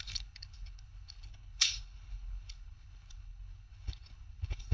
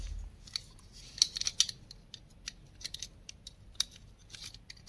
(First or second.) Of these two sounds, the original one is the second